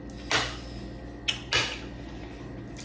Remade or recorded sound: recorded